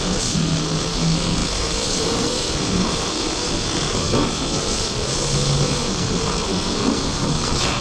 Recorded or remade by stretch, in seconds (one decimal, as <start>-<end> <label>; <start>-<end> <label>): 0.0-7.8 remade